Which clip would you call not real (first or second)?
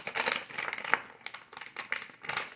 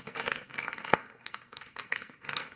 second